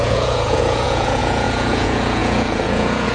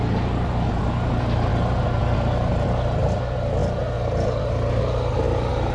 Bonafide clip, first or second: second